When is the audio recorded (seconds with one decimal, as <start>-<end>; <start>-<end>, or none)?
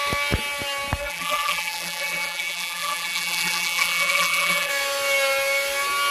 0.0-1.0; 4.7-6.1